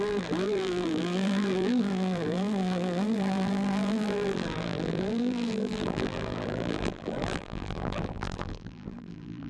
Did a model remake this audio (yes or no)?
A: yes